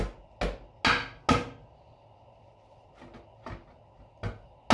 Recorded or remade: recorded